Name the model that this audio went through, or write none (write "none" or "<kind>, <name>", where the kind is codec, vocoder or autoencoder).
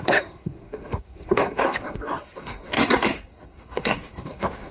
codec, SNAC